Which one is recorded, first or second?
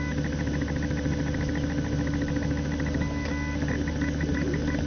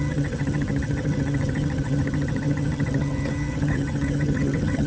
first